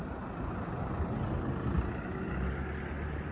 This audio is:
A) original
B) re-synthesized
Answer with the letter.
A